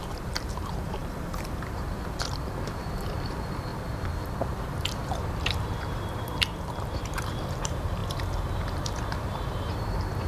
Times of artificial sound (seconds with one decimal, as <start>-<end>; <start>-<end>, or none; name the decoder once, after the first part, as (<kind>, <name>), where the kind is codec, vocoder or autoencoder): 0.0-3.7 (vocoder, BigVGAN v2); 4.4-10.3